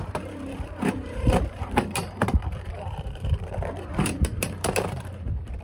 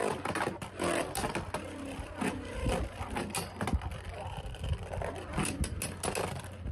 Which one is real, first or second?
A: second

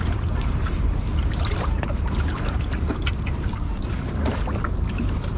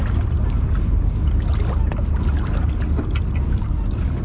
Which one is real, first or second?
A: second